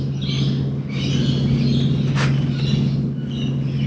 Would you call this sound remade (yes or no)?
no